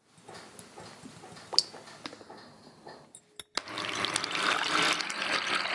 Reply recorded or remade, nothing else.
recorded